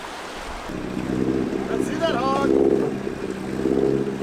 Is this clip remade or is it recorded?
recorded